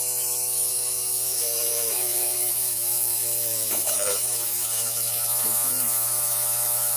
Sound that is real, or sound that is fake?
fake